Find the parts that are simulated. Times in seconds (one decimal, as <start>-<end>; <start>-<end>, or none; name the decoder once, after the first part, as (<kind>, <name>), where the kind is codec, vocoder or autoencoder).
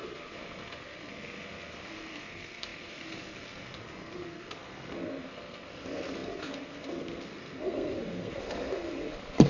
0.0-9.5 (codec, SNAC)